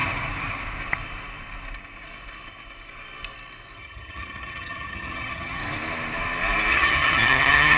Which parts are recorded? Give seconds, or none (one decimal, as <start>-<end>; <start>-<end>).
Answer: 0.0-3.8; 5.6-6.7